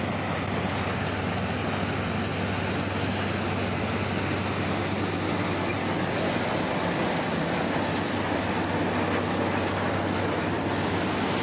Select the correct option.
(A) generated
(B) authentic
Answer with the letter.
B